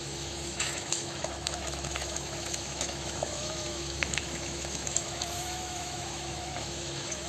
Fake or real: fake